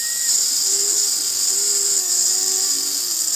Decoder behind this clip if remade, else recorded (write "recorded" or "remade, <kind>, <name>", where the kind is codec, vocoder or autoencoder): recorded